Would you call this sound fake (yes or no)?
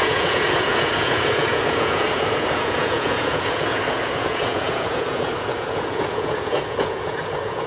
yes